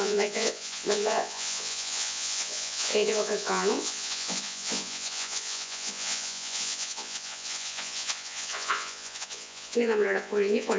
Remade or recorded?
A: remade